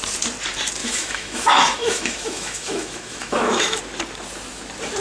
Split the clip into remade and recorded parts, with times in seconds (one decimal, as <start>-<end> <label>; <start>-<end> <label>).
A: 0.0-0.8 recorded; 0.8-3.8 remade; 3.8-5.0 recorded